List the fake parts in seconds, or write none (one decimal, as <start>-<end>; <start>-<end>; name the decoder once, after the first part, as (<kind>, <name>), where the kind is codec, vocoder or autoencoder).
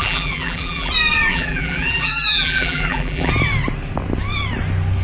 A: 0.0-0.9 (vocoder, BigVGAN v2); 1.3-3.3